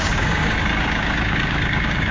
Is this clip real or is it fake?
fake